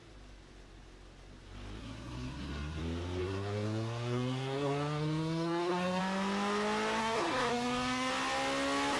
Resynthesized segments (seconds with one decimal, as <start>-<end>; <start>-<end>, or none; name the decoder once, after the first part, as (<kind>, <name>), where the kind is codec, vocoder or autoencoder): 1.8-2.8 (codec, SNAC); 3.2-6.0; 7.0-8.1